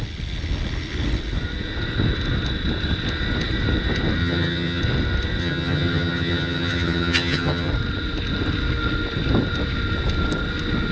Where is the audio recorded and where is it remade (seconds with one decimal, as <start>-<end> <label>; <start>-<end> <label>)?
0.0-4.2 recorded; 4.2-4.8 remade; 4.8-5.4 recorded; 5.4-7.7 remade; 7.7-10.9 recorded